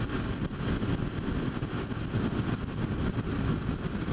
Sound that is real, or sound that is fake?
real